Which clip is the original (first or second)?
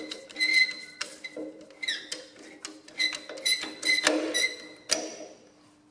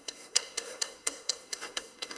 first